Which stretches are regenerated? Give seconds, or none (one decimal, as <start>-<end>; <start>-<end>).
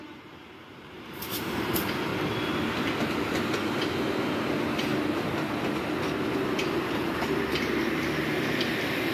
0.0-2.1; 6.3-9.1